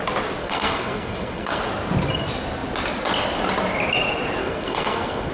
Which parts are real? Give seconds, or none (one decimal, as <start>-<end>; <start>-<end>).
0.0-0.4; 1.6-4.4